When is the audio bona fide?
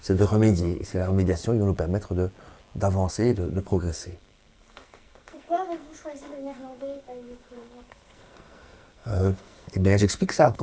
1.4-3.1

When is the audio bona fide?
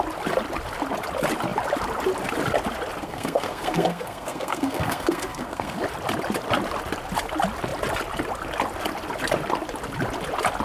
0.0-3.0; 5.8-10.6